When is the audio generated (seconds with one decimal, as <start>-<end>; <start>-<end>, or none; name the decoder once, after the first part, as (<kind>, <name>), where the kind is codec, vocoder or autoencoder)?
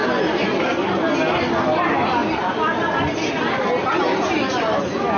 none